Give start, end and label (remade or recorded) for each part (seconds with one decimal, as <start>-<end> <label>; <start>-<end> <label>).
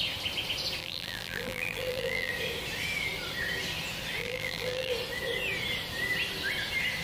0.0-0.8 recorded; 0.8-2.3 remade; 2.3-4.2 recorded; 4.2-4.9 remade; 4.9-7.0 recorded